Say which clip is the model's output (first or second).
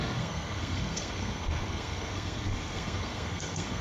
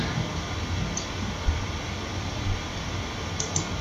first